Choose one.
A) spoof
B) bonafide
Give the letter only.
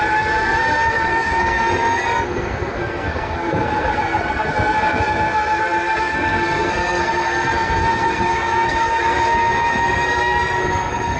A